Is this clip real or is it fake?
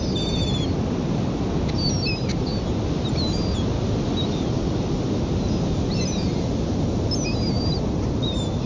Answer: real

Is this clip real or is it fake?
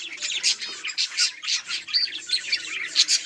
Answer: fake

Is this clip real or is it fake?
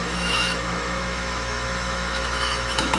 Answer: fake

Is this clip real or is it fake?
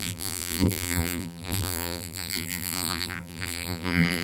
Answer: fake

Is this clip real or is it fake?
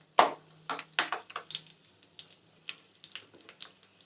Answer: real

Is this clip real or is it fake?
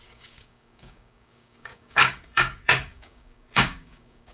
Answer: fake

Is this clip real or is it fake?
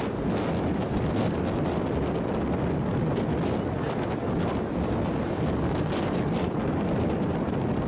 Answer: real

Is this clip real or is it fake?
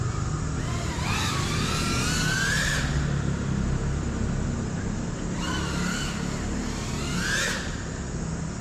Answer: real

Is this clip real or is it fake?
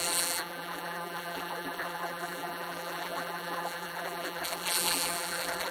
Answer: fake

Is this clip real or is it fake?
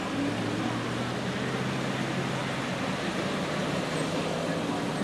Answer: real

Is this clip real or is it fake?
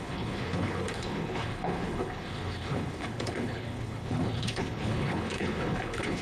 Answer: fake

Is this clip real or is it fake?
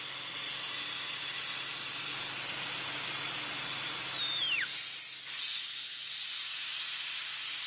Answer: real